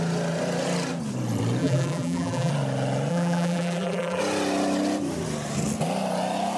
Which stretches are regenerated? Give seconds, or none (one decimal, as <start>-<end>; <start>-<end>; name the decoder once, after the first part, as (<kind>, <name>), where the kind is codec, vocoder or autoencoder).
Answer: 1.6-2.5 (vocoder, BigVGAN v2); 3.1-4.2